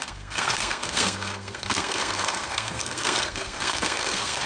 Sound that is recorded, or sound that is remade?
remade